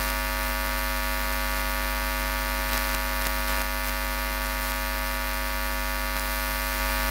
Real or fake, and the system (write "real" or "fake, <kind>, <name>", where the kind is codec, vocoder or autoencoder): real